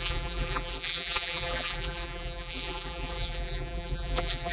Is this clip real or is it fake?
fake